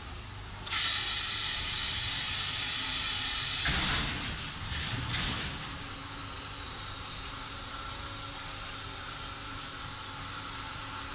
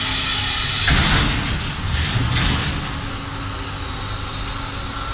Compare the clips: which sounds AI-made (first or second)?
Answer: first